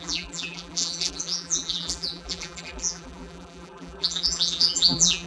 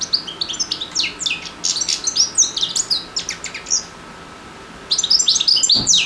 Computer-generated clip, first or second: first